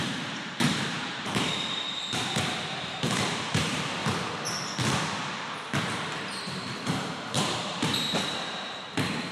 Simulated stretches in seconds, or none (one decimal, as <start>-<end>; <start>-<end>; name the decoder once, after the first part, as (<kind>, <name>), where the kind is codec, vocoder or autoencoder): 0.0-4.0 (vocoder, BigVGAN v2); 5.8-9.3